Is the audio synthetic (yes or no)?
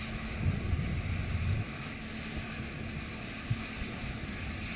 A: no